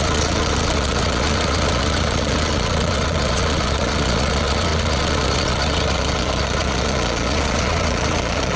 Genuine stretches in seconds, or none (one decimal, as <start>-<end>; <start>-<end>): none